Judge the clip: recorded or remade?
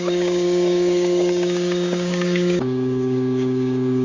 remade